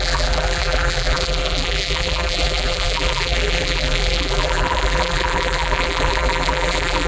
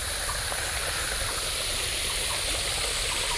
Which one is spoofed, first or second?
first